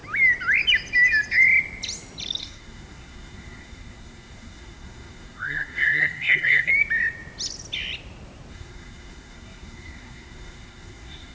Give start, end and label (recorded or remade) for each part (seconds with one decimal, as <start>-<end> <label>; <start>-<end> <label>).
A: 0.0-2.4 recorded; 2.4-6.7 remade; 6.7-8.5 recorded; 8.5-11.3 remade